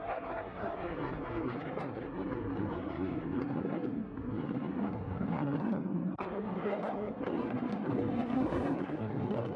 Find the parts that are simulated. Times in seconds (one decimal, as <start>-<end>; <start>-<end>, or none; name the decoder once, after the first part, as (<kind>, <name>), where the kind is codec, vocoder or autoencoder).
0.0-9.6 (codec, SNAC)